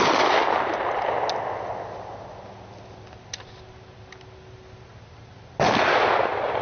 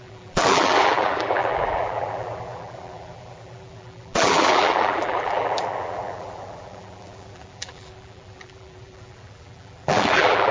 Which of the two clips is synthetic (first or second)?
second